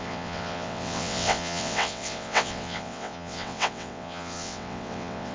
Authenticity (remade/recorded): remade